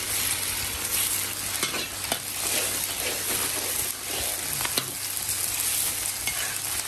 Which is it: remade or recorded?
recorded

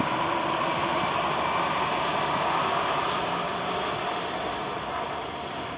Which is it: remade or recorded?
recorded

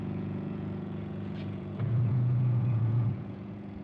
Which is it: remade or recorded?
remade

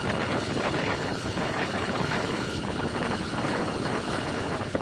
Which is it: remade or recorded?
remade